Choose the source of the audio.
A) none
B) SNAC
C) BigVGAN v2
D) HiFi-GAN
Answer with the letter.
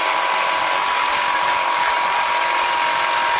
A